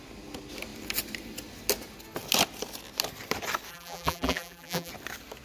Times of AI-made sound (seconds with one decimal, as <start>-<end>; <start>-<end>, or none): 3.7-4.9